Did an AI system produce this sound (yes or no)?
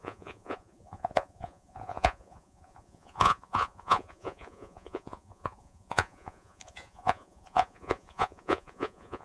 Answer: yes